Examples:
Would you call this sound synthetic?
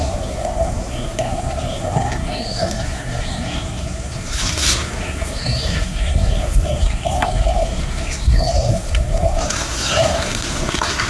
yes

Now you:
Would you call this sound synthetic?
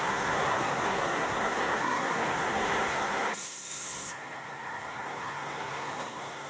yes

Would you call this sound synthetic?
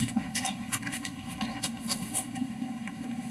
yes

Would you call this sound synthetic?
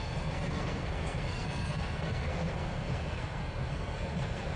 yes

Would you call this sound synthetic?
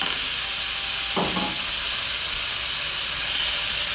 no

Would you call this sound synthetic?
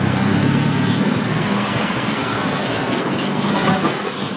yes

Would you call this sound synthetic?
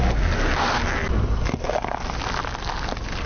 no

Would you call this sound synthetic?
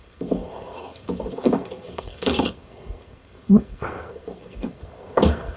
yes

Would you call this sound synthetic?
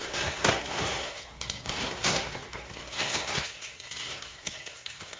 yes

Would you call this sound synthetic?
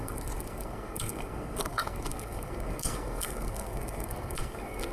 yes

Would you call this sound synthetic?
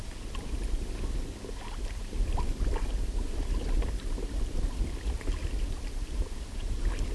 no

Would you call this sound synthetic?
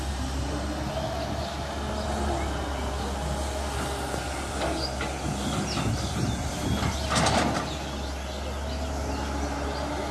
no